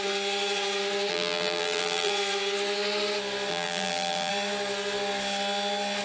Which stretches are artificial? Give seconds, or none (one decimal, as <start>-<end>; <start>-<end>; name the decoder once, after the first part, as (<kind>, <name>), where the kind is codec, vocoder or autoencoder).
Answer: 1.1-2.1 (vocoder, BigVGAN v2); 3.5-4.3